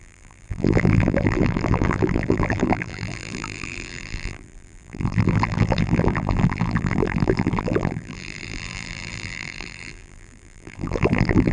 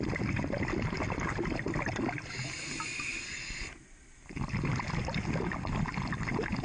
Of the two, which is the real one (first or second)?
second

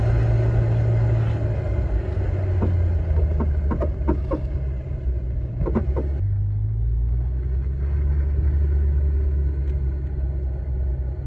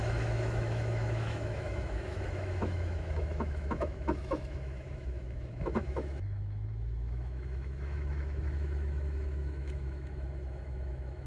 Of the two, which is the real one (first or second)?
first